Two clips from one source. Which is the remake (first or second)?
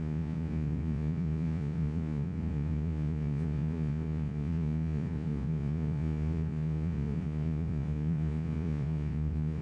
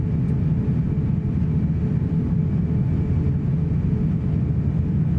first